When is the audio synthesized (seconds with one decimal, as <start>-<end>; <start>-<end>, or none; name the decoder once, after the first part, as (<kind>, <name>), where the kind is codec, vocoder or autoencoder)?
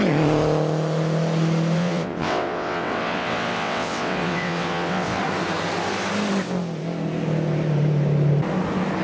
1.8-5.2 (vocoder, WaveNeXt)